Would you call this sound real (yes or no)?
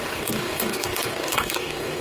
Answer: no